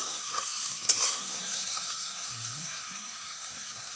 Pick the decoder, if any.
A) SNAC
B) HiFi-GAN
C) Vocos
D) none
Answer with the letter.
A